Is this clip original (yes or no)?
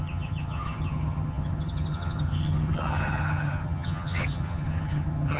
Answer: no